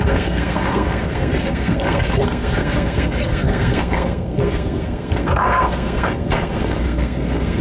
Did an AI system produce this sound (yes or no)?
yes